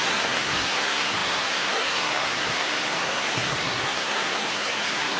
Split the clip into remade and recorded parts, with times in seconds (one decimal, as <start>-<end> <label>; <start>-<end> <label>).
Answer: 0.0-5.2 remade